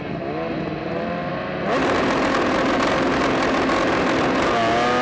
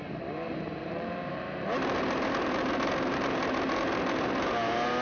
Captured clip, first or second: first